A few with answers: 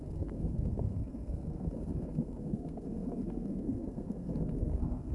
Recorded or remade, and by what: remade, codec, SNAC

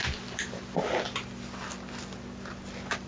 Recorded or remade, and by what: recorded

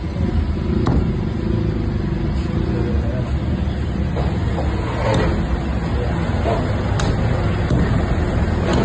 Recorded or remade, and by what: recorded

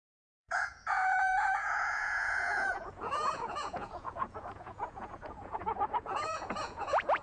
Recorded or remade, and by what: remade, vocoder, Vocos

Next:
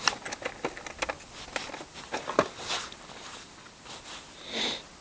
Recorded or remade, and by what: recorded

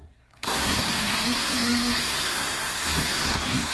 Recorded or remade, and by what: remade, codec, SNAC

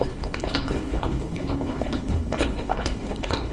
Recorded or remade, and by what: remade, codec, HILCodec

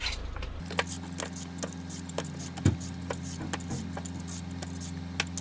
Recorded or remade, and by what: recorded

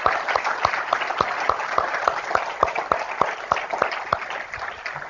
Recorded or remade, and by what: recorded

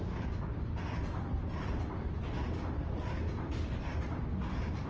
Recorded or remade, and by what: recorded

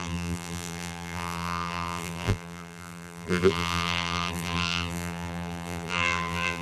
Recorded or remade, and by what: remade, vocoder, BigVGAN v2